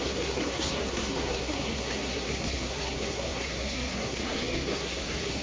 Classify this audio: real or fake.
fake